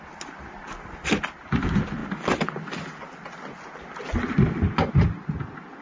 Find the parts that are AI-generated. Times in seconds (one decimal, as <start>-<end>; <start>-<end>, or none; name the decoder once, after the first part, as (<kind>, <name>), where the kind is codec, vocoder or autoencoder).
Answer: none